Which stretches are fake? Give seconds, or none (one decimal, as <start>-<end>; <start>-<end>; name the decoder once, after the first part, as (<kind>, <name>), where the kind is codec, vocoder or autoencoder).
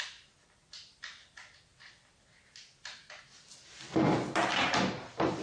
none